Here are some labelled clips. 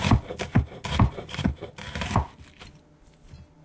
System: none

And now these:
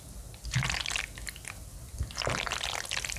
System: none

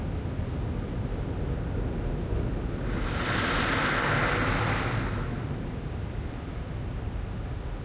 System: none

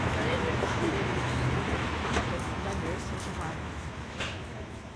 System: autoencoder, DAC-VAE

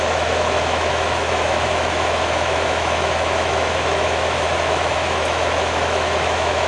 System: autoencoder, DAC-VAE